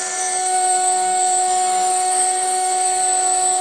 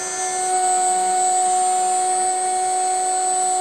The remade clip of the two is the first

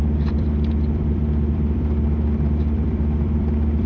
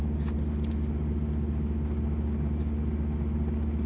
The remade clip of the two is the first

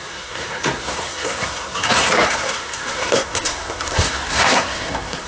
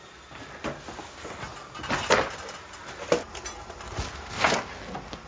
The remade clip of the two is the first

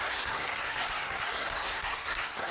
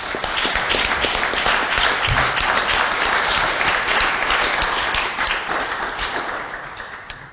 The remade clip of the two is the first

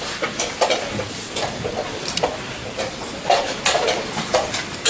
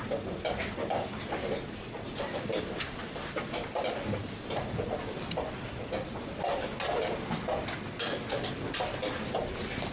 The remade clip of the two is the first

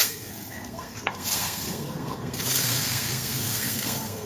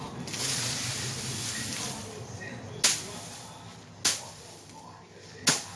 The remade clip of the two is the first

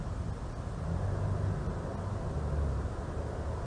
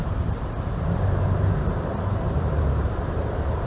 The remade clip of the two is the second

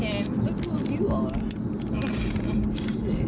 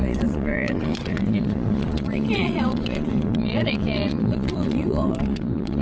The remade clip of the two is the second